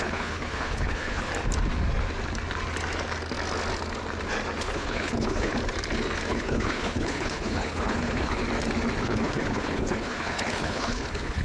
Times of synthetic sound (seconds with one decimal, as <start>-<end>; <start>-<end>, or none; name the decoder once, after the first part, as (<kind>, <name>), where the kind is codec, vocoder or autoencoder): 0.0-1.3 (codec, HILCodec); 4.6-5.6; 6.3-8.4; 9.0-11.4